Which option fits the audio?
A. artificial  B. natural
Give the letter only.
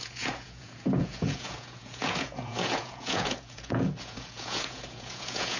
A